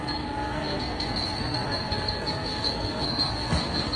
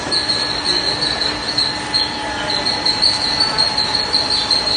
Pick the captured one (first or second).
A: second